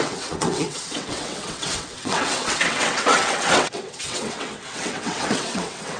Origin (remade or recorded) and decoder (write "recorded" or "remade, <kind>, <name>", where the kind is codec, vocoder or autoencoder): remade, vocoder, WaveNeXt